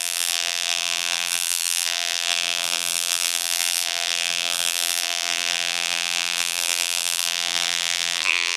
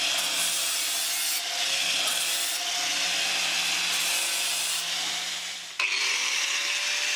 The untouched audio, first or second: second